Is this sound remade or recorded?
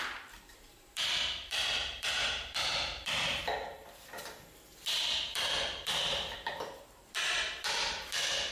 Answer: remade